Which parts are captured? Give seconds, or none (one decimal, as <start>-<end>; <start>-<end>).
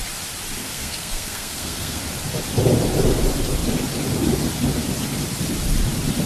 0.0-0.6; 2.0-6.3